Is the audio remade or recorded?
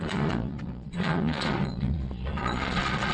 remade